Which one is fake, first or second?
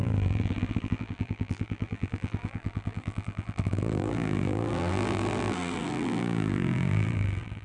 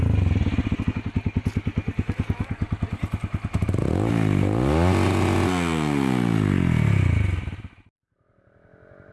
first